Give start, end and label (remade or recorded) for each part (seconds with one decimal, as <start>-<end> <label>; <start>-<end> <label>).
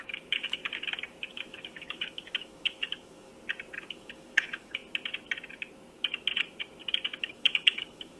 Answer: 0.0-0.6 remade; 0.6-1.3 recorded; 1.3-3.3 remade; 3.3-3.9 recorded; 3.9-4.8 remade; 4.8-7.2 recorded; 7.2-8.2 remade